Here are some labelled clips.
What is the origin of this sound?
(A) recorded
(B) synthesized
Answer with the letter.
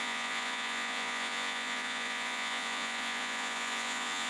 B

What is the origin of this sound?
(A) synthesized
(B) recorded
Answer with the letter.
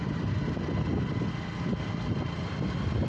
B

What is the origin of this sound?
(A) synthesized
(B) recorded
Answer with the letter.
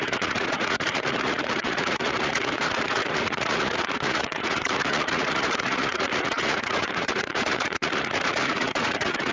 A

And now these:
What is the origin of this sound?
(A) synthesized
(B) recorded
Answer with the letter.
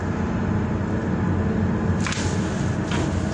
B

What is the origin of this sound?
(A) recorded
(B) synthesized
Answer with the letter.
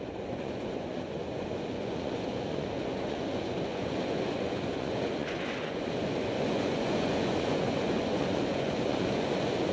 B